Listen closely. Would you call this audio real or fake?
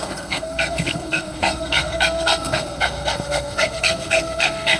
fake